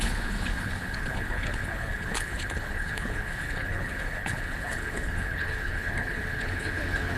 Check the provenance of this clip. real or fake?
fake